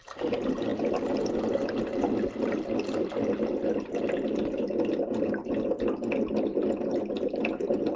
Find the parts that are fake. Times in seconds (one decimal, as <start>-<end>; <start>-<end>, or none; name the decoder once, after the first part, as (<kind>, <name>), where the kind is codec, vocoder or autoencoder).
none